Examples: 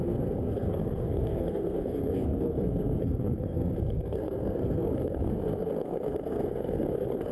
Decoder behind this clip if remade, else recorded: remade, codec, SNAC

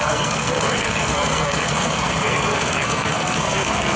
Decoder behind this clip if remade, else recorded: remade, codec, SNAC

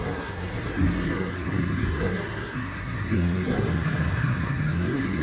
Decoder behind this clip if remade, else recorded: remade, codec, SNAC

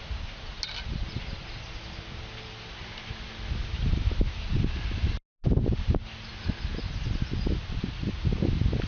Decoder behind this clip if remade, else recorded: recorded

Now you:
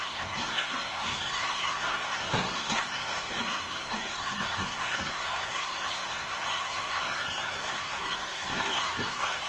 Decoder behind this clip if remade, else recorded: remade, codec, SNAC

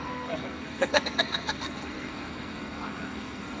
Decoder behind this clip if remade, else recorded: remade, codec, SNAC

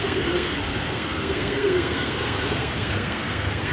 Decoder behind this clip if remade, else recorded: remade, codec, SNAC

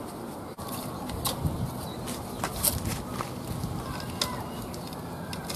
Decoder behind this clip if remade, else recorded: recorded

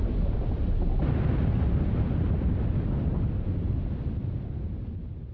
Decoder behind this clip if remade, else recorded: recorded